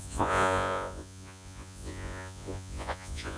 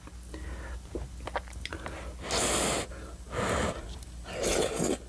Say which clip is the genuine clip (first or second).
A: second